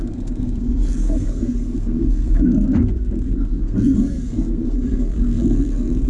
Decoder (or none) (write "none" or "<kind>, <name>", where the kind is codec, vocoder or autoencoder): codec, SNAC